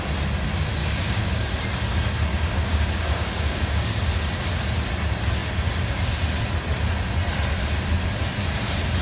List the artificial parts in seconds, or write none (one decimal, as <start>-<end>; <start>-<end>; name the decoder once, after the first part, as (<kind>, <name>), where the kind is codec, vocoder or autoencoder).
0.8-1.5 (codec, DAC); 2.3-3.9